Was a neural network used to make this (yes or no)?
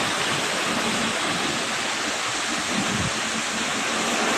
no